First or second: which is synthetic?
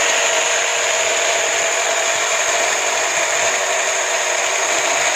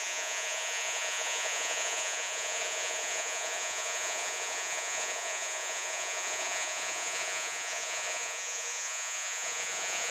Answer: second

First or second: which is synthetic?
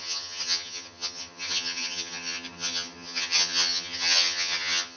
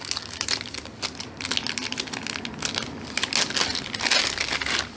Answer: first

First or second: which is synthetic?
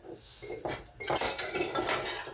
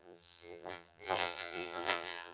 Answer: second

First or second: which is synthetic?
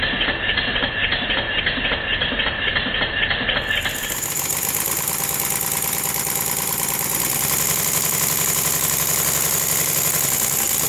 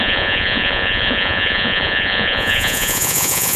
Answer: second